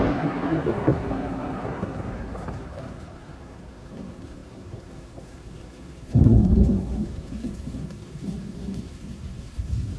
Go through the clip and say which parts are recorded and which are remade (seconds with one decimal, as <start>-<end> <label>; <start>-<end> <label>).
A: 0.0-10.0 remade